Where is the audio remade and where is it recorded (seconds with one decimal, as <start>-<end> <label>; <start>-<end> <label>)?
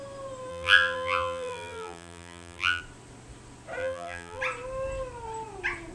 0.0-0.5 recorded; 0.5-2.8 remade; 2.8-3.8 recorded; 3.8-4.4 remade; 4.4-5.9 recorded